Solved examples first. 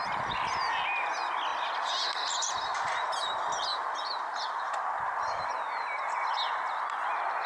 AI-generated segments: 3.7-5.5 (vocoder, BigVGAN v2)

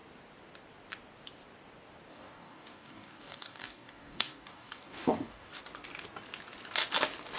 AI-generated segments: 2.1-5.6 (codec, DAC)

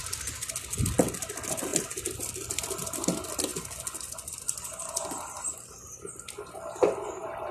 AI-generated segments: 1.7-2.6 (vocoder, BigVGAN v2)